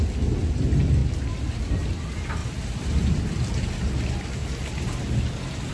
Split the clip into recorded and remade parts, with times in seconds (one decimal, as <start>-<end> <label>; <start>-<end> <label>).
0.0-2.4 recorded; 2.4-3.1 remade; 3.1-5.7 recorded